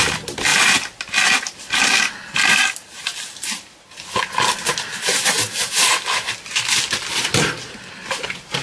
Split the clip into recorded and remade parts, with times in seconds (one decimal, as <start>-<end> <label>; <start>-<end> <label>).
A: 0.0-8.6 recorded